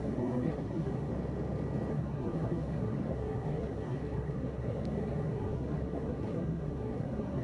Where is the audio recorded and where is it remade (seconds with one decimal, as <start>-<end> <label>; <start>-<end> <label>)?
0.0-1.1 remade; 1.1-1.9 recorded; 1.9-7.4 remade